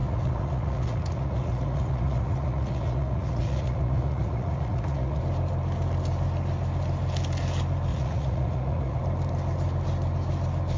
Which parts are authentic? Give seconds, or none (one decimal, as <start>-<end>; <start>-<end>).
5.2-7.9; 9.0-10.8